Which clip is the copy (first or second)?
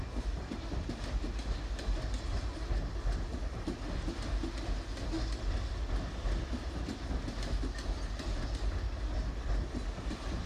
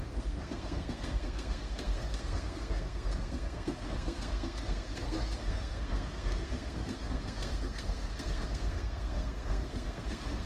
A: second